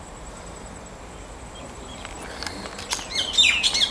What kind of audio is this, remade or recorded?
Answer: recorded